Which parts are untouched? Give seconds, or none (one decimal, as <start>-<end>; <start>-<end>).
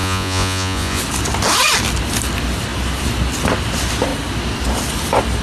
1.0-5.4